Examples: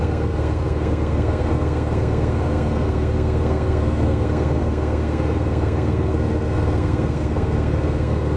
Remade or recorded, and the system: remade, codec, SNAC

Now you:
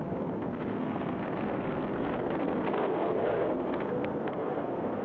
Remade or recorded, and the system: remade, codec, SNAC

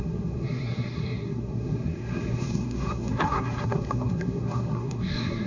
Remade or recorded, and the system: remade, codec, SNAC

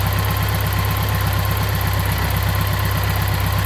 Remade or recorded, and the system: recorded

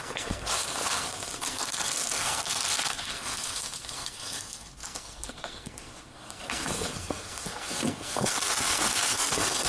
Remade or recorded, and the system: remade, codec, SNAC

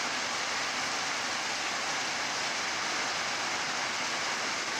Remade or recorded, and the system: recorded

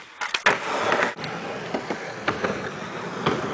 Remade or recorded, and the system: recorded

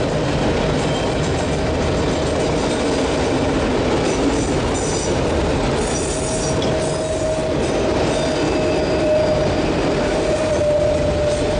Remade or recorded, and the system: recorded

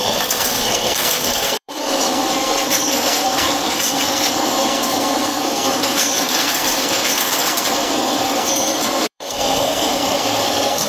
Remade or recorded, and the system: remade, codec, SNAC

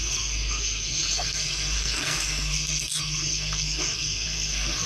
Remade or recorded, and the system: remade, codec, SNAC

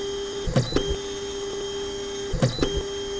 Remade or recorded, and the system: recorded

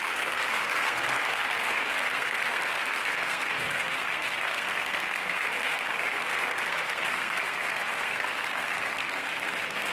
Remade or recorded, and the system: remade, codec, SNAC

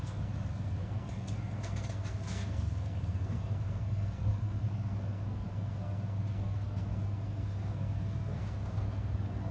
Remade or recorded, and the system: remade, codec, SNAC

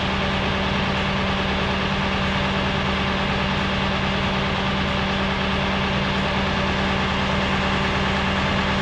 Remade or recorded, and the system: recorded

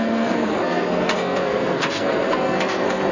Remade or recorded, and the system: remade, codec, SNAC